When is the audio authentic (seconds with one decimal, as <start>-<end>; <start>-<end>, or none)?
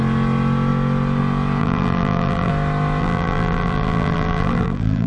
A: 0.0-1.6; 2.5-3.0